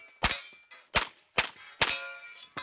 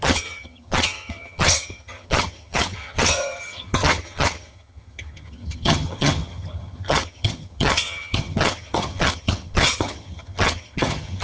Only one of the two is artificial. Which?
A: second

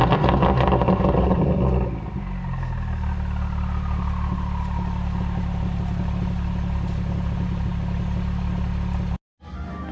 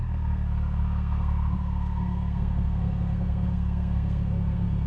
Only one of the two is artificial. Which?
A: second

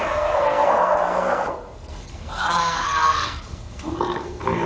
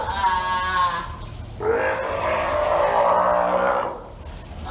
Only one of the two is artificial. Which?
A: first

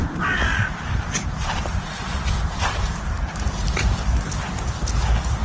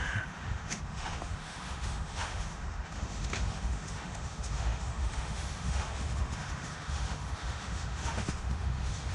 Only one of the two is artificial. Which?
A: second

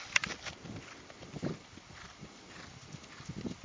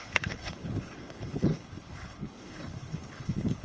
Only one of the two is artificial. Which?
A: second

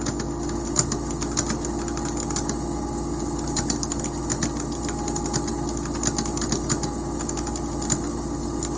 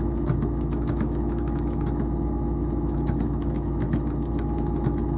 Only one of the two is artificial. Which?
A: second